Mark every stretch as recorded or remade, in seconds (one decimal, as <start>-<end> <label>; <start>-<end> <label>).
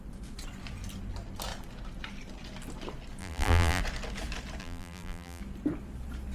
0.0-3.2 recorded; 3.2-3.8 remade; 3.8-4.6 recorded; 4.6-5.4 remade; 5.4-6.3 recorded